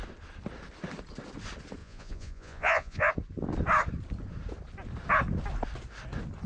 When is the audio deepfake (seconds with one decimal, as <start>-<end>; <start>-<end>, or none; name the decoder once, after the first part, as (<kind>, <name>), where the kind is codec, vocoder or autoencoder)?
1.8-3.1 (vocoder, Vocos)